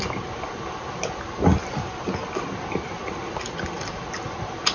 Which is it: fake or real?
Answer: real